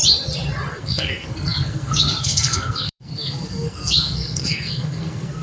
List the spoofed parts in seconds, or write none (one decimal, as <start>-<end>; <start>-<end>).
0.7-5.4